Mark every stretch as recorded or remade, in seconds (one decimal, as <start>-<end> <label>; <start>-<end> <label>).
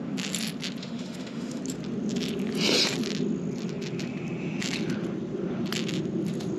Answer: 0.0-0.8 recorded; 0.8-1.6 remade; 1.6-6.6 recorded